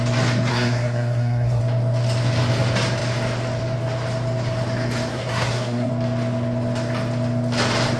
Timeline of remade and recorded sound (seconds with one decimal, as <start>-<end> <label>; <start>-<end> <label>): 0.0-0.5 recorded; 0.5-1.6 remade; 1.6-5.1 recorded; 5.1-5.9 remade; 5.9-8.0 recorded